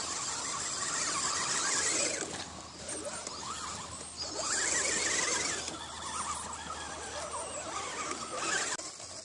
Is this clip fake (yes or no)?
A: no